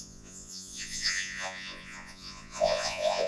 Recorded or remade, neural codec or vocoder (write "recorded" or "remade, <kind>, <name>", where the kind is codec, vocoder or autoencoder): remade, vocoder, Vocos